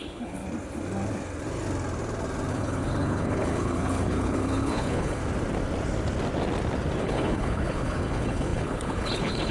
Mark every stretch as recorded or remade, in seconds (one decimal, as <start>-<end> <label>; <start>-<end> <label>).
0.0-0.4 remade; 0.4-2.5 recorded; 2.5-5.2 remade; 5.2-7.0 recorded; 7.0-9.5 remade